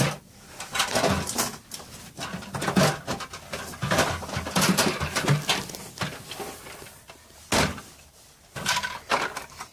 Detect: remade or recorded recorded